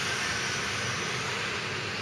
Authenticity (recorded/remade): recorded